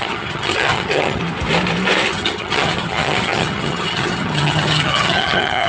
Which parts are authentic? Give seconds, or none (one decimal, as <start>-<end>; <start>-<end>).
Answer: 1.2-2.1

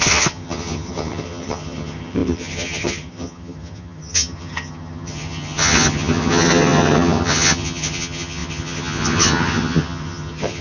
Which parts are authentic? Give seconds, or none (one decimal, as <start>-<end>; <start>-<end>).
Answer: none